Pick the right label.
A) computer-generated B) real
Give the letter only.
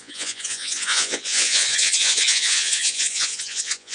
A